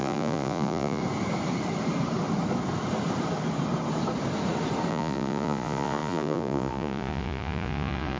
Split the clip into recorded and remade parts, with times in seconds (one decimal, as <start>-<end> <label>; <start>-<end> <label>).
0.0-1.0 remade; 1.0-4.9 recorded; 4.9-8.2 remade